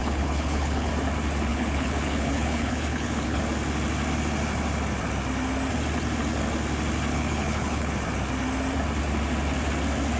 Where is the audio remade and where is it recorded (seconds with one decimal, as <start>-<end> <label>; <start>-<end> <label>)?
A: 0.0-0.9 remade; 0.9-1.5 recorded; 1.5-3.4 remade; 3.4-7.1 recorded; 7.1-7.9 remade; 7.9-10.2 recorded